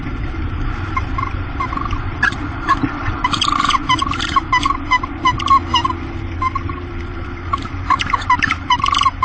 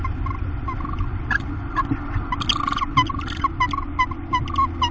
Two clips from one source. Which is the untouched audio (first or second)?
second